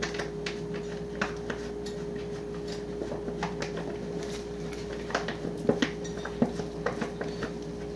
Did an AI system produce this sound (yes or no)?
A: no